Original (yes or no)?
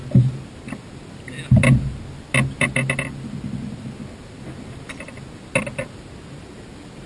yes